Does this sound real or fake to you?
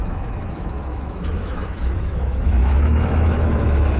fake